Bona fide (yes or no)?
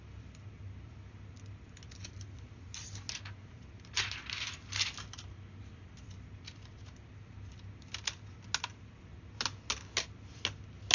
yes